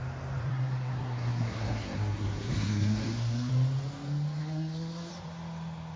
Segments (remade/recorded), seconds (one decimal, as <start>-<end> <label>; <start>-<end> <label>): 0.0-0.5 recorded; 0.5-3.5 remade; 3.5-4.4 recorded; 4.4-5.1 remade; 5.1-6.0 recorded